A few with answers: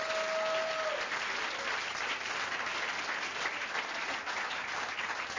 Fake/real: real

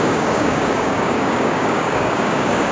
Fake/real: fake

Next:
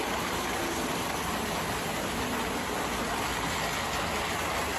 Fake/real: real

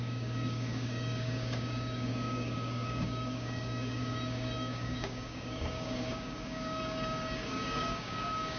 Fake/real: fake